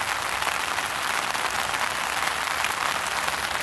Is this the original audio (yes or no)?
yes